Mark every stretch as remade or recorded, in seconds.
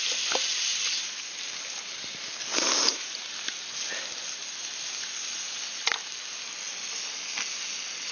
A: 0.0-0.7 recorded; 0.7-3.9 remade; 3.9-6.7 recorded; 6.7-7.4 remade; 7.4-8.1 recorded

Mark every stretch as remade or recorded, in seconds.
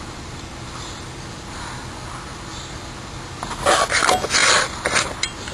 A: 0.0-5.5 recorded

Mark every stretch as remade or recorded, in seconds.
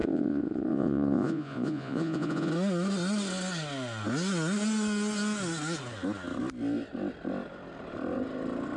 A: 0.0-2.5 remade; 2.5-8.8 recorded